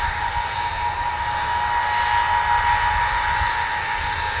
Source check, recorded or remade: recorded